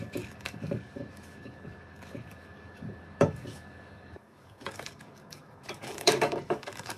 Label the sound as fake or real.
fake